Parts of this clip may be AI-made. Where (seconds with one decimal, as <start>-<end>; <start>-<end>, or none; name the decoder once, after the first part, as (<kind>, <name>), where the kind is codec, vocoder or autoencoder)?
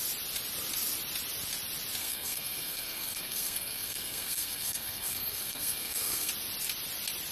2.0-6.3 (codec, SNAC)